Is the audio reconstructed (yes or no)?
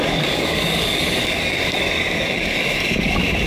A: yes